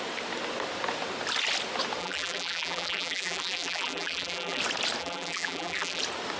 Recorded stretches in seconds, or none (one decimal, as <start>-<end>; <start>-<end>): 0.0-2.0; 4.6-5.0; 6.0-6.4